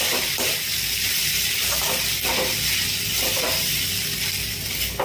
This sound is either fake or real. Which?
real